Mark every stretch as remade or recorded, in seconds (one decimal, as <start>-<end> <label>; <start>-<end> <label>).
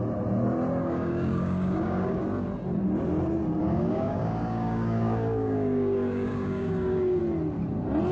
0.0-0.8 recorded; 0.8-2.2 remade; 2.2-3.6 recorded; 3.6-7.2 remade; 7.2-8.1 recorded